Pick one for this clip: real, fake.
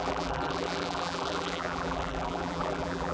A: fake